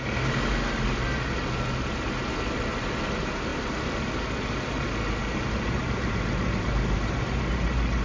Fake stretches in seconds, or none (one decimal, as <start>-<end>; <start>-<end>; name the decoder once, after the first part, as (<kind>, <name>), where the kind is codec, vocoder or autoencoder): none